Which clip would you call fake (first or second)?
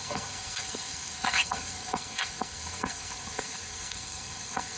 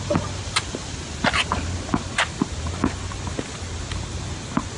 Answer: first